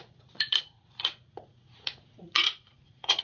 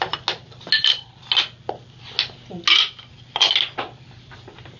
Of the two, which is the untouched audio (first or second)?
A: second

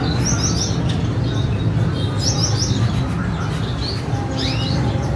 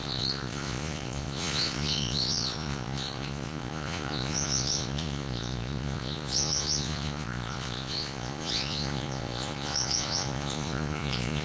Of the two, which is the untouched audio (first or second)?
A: first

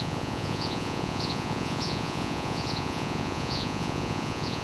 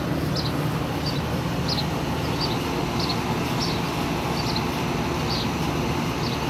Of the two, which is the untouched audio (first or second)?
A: second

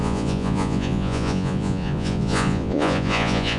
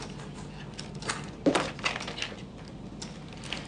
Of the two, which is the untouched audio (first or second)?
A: second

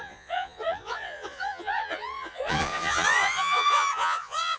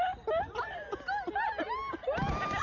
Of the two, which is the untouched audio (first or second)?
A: second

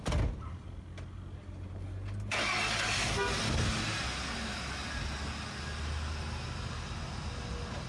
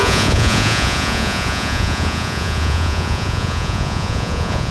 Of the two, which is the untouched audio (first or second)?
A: first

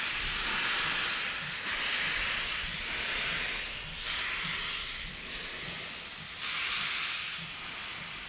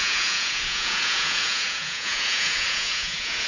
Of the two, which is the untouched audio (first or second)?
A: first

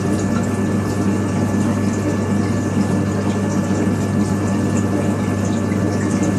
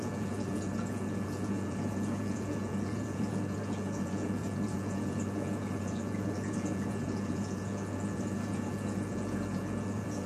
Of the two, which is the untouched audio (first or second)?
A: first